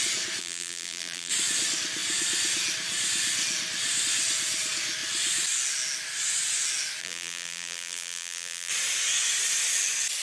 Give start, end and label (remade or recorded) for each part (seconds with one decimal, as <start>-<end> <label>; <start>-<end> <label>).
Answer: 0.0-0.4 recorded; 0.4-1.3 remade; 1.3-7.0 recorded; 7.0-8.7 remade; 8.7-10.2 recorded